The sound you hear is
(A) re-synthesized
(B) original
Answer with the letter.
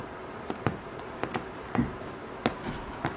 A